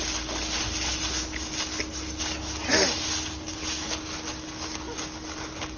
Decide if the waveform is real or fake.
real